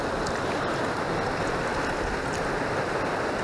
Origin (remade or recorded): recorded